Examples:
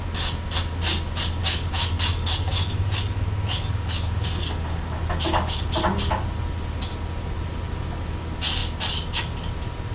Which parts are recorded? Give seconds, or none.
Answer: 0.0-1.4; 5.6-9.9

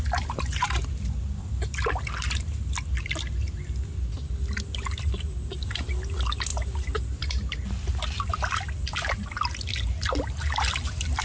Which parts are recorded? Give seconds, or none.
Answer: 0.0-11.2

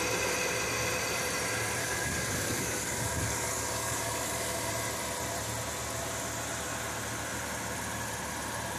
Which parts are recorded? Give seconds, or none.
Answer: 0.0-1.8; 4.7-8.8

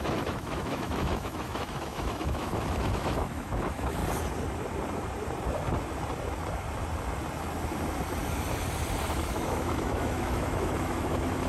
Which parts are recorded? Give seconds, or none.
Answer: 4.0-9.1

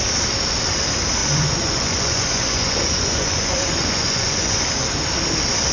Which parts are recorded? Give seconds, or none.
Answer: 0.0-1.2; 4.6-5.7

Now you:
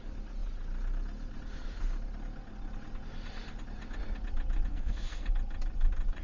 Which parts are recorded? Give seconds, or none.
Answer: 0.0-4.7; 5.3-6.2

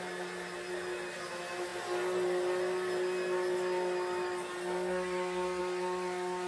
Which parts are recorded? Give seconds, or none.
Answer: 0.0-6.5